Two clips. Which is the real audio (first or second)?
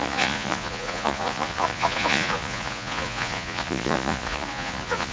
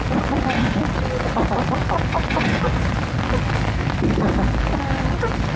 second